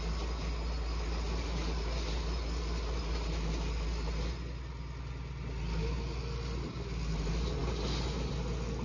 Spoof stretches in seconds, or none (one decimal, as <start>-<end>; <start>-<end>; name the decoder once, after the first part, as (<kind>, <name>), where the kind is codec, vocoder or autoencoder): none